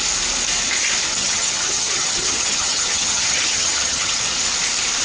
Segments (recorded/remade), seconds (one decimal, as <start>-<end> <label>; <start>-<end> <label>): 0.0-1.2 recorded; 1.2-4.2 remade; 4.2-5.0 recorded